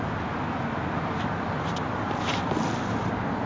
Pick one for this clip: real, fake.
real